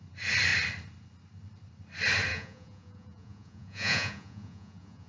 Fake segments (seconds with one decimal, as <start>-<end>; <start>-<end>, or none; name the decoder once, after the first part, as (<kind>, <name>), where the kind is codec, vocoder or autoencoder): 2.3-5.1 (vocoder, Vocos)